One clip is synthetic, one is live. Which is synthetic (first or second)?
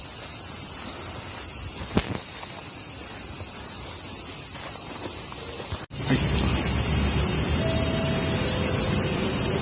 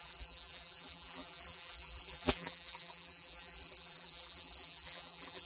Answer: second